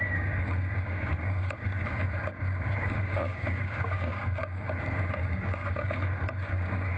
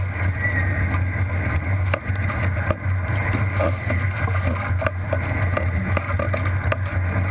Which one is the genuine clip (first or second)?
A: second